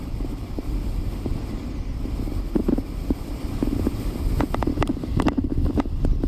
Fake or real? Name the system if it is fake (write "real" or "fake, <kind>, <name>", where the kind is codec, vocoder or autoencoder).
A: fake, vocoder, BigVGAN v2